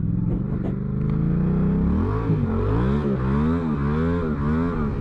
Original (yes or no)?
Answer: yes